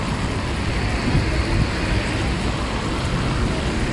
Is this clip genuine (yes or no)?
yes